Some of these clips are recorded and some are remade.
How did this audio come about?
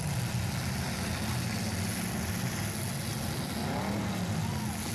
recorded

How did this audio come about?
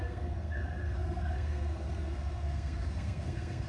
remade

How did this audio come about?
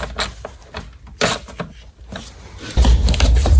recorded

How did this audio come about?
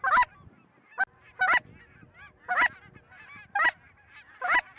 recorded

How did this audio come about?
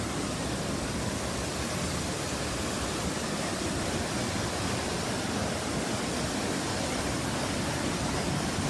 recorded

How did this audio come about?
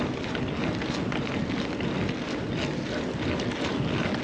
recorded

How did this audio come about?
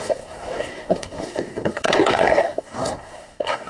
remade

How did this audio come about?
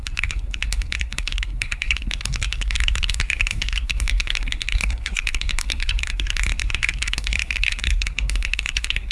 remade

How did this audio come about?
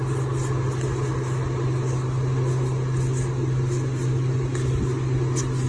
recorded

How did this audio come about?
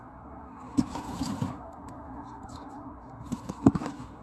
remade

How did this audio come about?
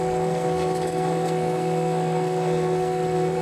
remade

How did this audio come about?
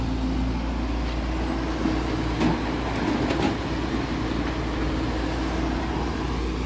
recorded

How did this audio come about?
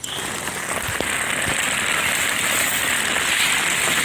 recorded